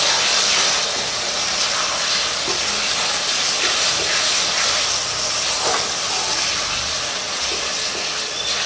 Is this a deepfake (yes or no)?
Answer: no